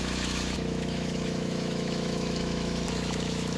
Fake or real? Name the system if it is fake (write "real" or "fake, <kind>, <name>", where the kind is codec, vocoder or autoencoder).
fake, autoencoder, DAC-VAE